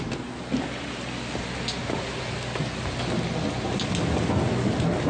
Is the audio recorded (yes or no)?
yes